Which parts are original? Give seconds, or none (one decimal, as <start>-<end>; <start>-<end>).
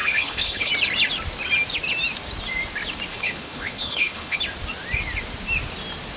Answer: 0.7-3.1; 4.4-6.2